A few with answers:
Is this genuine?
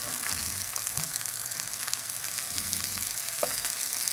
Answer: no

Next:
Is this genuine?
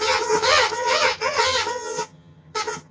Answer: no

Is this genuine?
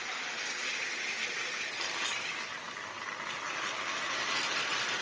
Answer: yes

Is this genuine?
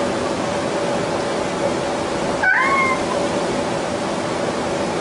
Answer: yes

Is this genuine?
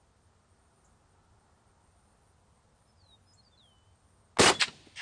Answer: yes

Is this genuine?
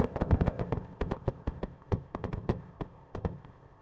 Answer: no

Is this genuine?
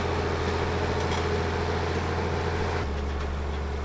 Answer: yes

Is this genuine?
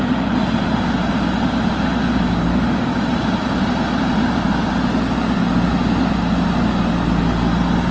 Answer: yes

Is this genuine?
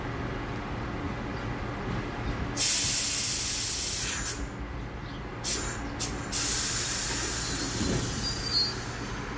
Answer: yes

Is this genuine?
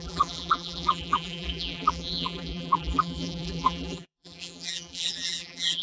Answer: no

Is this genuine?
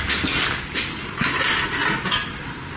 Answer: yes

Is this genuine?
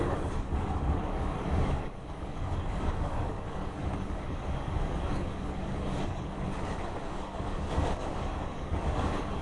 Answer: no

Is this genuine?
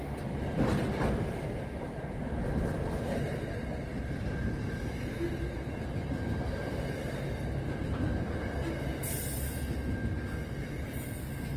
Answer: yes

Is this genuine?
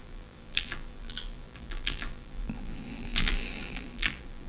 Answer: no